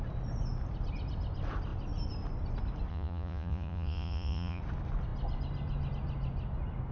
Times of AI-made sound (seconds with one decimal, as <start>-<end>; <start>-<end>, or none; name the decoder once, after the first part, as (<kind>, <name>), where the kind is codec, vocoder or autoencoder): 2.9-4.6 (vocoder, Vocos)